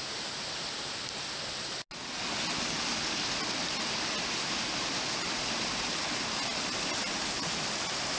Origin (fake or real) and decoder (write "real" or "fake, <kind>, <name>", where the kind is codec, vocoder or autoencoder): real